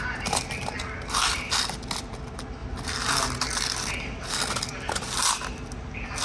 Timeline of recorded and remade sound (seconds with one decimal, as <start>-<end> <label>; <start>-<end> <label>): 0.0-6.2 recorded